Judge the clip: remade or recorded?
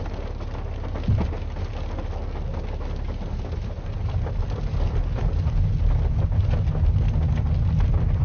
recorded